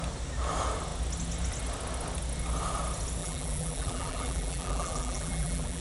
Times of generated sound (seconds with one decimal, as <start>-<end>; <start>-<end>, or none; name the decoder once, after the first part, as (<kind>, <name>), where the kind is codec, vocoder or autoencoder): 3.2-5.8 (vocoder, BigVGAN v2)